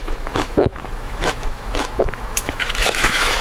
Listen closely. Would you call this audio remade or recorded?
remade